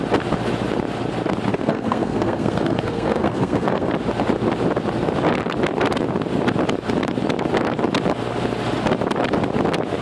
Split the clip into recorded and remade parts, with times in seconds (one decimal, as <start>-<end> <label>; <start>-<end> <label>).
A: 0.0-1.5 recorded; 1.5-3.9 remade; 3.9-10.0 recorded